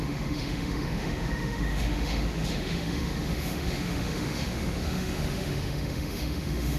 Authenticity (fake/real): fake